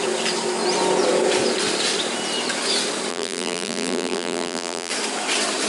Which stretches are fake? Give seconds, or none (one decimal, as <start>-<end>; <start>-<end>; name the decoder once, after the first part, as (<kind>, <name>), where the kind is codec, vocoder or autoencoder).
3.1-4.9 (vocoder, BigVGAN v2)